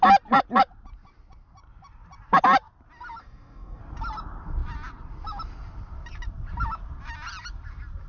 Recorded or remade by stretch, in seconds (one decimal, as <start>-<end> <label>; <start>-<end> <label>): 0.0-3.2 recorded; 3.2-3.8 remade; 3.8-8.1 recorded